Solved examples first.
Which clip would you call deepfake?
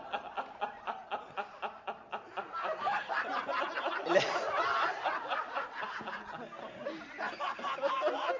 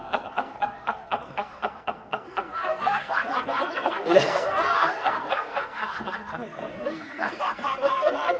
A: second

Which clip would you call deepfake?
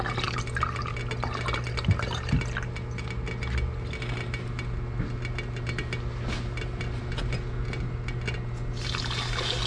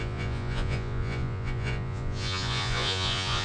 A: second